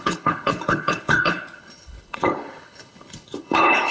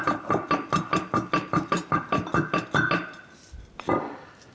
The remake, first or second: first